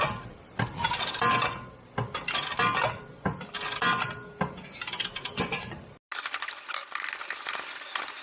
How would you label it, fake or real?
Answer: real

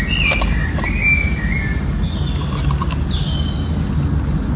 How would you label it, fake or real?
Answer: real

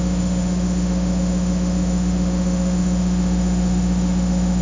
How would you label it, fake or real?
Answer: fake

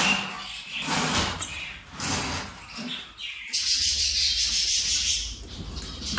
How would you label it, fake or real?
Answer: real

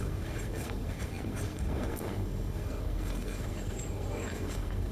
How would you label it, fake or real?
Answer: fake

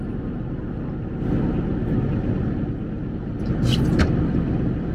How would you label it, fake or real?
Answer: real